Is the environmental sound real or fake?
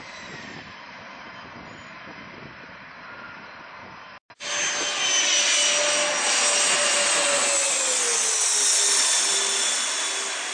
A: real